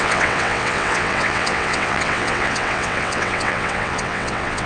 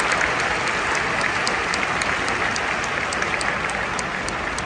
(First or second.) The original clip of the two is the second